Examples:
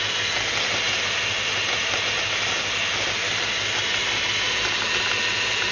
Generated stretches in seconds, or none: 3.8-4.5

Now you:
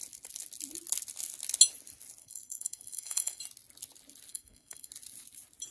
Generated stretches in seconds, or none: 2.2-3.4; 4.3-4.9

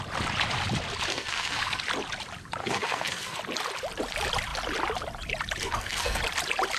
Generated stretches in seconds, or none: 1.1-1.8; 2.6-3.4; 5.6-6.2

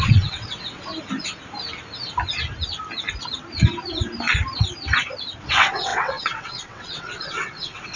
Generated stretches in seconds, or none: 0.0-0.9; 5.4-8.0

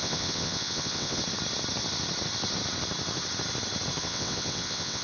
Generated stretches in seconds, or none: 0.0-1.2; 4.0-5.0

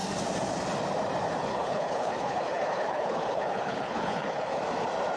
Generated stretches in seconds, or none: 1.5-4.6